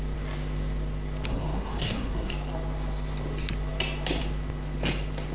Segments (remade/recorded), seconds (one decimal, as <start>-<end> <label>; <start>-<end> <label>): 0.0-1.3 recorded; 1.3-2.3 remade; 2.3-5.3 recorded